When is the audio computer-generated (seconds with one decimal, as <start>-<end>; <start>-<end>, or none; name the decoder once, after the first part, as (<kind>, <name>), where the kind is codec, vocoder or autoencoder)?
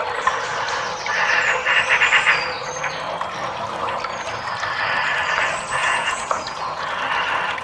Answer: 5.8-7.0 (vocoder, Vocos)